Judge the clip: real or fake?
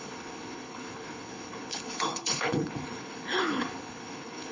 fake